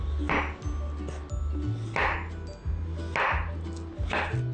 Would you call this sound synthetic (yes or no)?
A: no